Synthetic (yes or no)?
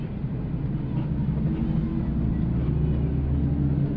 no